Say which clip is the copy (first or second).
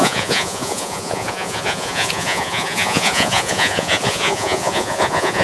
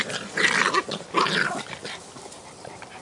first